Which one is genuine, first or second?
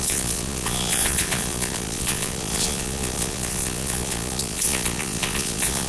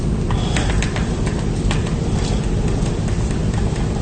second